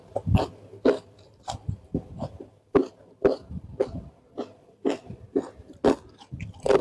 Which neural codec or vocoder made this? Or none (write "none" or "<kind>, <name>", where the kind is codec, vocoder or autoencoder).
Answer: none